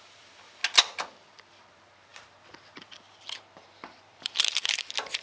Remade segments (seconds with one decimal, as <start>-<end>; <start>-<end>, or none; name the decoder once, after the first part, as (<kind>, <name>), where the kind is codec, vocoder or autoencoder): 0.0-0.6 (vocoder, BigVGAN v2); 1.7-5.2